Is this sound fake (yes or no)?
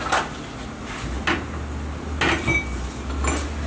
no